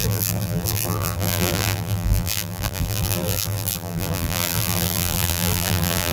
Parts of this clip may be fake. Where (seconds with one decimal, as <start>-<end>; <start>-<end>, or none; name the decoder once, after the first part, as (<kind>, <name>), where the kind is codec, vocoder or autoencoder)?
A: 0.0-6.1 (vocoder, BigVGAN v2)